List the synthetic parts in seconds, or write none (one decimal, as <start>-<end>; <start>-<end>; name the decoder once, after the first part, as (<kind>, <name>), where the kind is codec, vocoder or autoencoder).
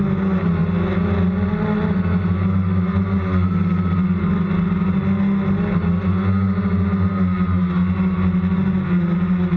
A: none